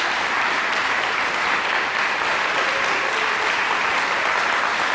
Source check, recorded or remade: recorded